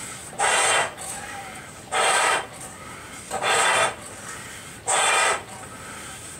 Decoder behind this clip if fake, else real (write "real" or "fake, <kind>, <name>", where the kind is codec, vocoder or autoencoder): real